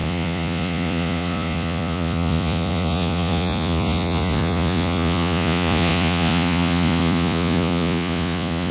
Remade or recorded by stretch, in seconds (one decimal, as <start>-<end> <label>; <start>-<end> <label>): 0.0-8.7 remade